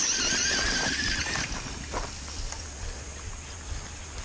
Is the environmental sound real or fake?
real